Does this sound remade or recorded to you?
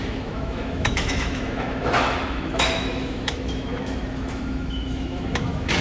remade